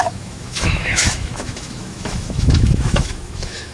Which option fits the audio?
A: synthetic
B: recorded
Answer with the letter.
A